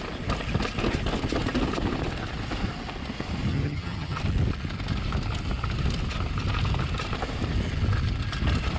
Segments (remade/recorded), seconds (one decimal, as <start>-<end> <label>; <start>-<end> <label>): 0.0-3.5 recorded; 3.5-4.2 remade; 4.2-8.8 recorded